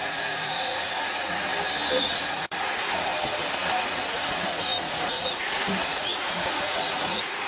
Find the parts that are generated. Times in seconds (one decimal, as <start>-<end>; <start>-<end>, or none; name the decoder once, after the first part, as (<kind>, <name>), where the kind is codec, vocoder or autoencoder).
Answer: 0.0-1.5 (vocoder, Vocos); 2.0-3.1; 3.8-7.5

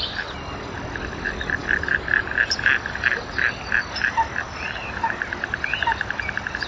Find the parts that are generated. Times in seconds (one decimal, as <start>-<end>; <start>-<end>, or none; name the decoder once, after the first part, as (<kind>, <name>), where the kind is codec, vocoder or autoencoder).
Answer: none

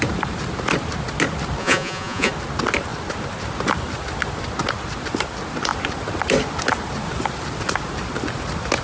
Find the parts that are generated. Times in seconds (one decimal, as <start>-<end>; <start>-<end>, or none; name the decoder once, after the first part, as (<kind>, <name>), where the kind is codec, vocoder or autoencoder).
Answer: 1.6-2.3 (vocoder, Vocos)

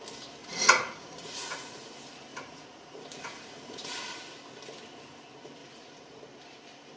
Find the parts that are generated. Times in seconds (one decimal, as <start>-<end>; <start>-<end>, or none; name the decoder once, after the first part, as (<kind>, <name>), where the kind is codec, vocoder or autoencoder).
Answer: 0.4-1.9 (vocoder, Vocos); 2.3-4.2; 5.6-6.2

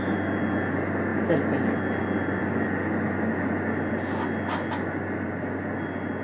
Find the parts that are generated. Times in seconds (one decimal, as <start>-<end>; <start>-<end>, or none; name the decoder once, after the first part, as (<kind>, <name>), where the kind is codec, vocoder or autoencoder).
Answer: none

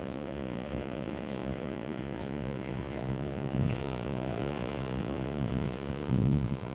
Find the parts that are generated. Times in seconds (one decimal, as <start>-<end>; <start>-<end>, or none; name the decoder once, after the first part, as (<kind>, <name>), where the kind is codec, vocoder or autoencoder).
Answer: 0.0-6.7 (vocoder, Vocos)